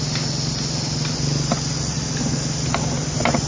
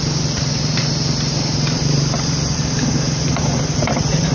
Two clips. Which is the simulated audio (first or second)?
second